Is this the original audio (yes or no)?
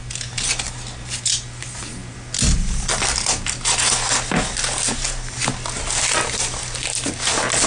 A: yes